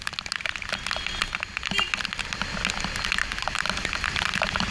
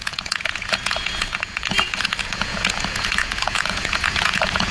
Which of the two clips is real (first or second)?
first